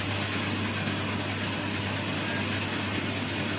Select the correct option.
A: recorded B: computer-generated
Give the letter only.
A